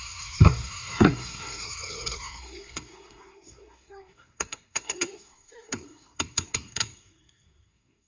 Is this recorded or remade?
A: remade